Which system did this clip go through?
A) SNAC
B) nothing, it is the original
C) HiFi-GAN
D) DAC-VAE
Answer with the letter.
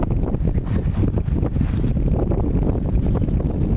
B